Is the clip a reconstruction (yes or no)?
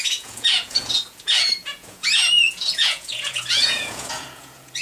yes